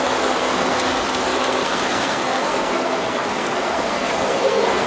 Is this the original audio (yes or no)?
no